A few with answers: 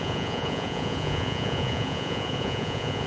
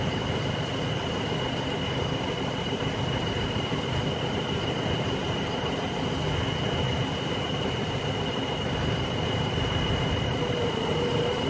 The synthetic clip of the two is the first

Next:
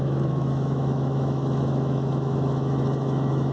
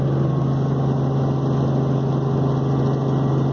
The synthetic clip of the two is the first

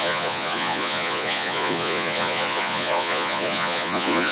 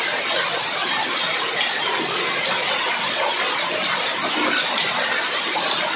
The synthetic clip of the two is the first